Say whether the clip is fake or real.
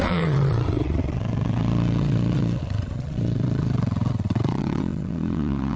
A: fake